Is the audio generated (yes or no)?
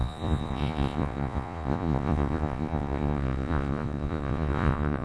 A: yes